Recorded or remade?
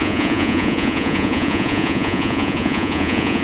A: remade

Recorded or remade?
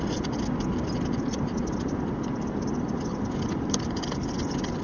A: recorded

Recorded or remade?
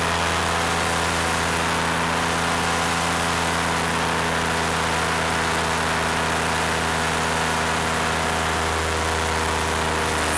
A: recorded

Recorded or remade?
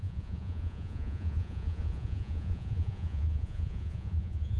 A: remade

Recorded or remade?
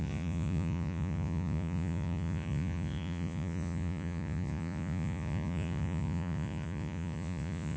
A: remade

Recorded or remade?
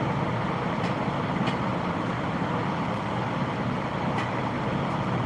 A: recorded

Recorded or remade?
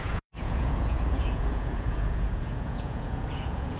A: remade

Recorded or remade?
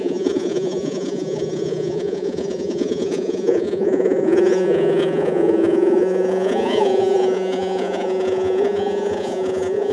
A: remade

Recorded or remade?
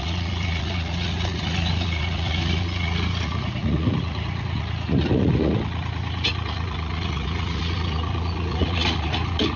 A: remade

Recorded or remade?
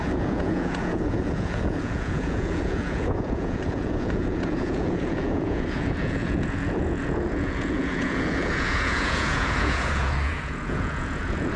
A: remade